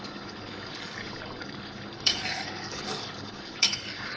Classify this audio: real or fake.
fake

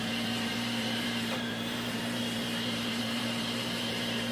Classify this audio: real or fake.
fake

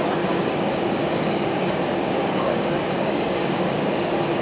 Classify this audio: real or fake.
fake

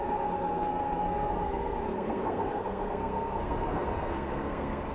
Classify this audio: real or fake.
fake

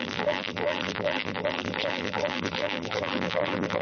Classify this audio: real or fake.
fake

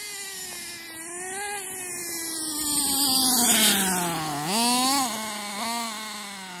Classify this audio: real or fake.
real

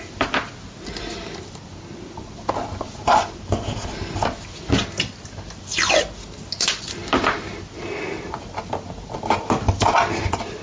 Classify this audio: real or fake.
real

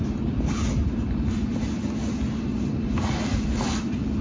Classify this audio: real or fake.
real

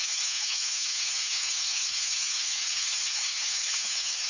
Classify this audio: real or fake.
fake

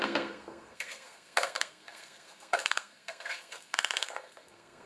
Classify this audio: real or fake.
fake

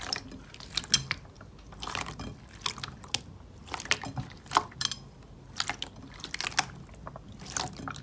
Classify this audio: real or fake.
real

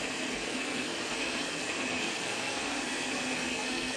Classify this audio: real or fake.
fake